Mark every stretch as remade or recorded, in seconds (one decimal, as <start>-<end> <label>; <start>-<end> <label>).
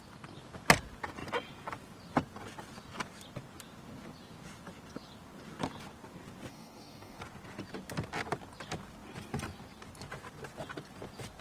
0.0-6.5 recorded; 6.5-7.2 remade; 7.2-11.4 recorded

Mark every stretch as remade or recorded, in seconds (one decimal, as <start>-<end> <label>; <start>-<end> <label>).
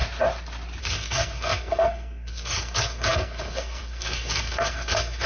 0.0-0.8 recorded; 0.8-5.3 remade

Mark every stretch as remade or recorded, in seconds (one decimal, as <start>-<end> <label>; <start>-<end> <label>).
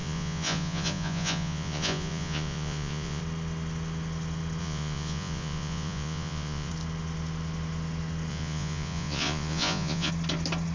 0.0-3.2 remade; 3.2-4.6 recorded; 4.6-6.7 remade; 6.7-8.3 recorded; 8.3-10.1 remade; 10.1-10.7 recorded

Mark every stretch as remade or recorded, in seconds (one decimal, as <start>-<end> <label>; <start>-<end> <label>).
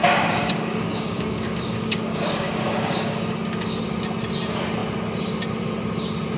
0.0-3.8 remade; 3.8-6.4 recorded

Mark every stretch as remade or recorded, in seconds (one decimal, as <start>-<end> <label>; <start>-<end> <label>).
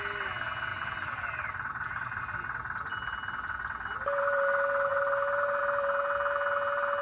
0.0-0.7 recorded; 0.7-2.2 remade; 2.2-7.0 recorded